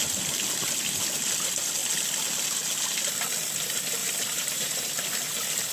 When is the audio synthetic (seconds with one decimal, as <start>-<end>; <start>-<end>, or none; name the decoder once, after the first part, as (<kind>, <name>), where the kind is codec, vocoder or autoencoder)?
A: 4.0-4.9 (vocoder, BigVGAN v2)